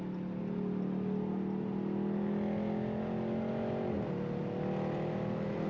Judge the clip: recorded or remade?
recorded